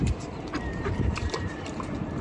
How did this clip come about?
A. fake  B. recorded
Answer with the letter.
A